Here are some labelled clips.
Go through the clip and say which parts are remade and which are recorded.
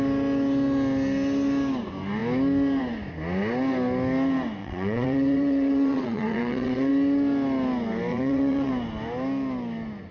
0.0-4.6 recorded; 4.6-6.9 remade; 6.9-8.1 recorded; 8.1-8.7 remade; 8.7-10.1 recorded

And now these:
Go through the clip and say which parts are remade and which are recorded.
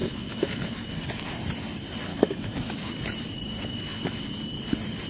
0.0-0.9 remade; 0.9-2.1 recorded; 2.1-2.9 remade; 2.9-5.1 recorded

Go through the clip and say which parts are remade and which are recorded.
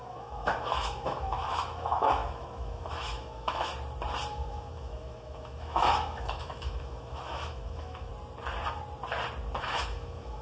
0.0-3.7 remade; 3.7-4.3 recorded; 4.3-8.1 remade; 8.1-9.6 recorded; 9.6-10.4 remade